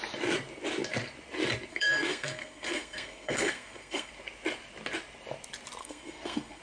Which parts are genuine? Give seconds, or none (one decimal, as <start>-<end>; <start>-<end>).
0.0-1.7; 4.1-5.8